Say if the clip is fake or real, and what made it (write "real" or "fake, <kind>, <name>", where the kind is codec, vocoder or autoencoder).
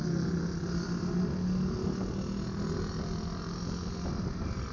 real